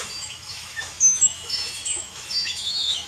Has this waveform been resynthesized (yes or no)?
yes